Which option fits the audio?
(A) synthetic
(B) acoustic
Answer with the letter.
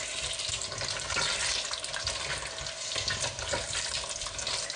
B